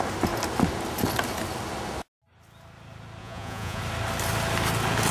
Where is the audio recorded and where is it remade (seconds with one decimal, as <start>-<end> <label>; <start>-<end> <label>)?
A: 0.0-3.2 recorded; 3.2-3.8 remade; 3.8-5.1 recorded